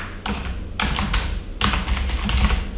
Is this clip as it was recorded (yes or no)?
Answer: yes